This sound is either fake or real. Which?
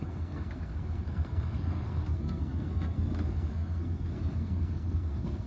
fake